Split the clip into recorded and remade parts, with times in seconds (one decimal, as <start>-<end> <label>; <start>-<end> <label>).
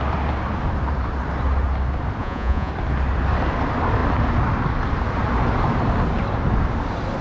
0.0-2.2 recorded; 2.2-2.7 remade; 2.7-7.2 recorded